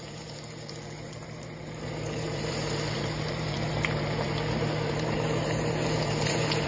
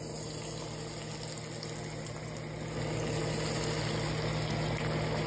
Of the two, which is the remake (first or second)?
first